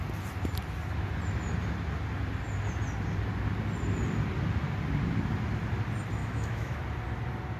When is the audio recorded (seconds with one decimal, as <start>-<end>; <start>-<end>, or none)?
0.0-6.2; 6.8-7.6